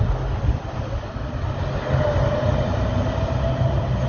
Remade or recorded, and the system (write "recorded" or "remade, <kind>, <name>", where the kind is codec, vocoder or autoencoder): recorded